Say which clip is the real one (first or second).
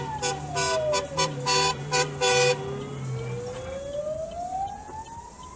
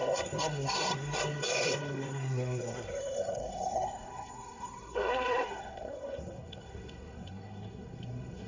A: first